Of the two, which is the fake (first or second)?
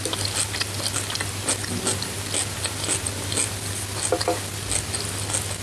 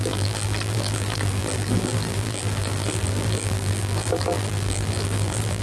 second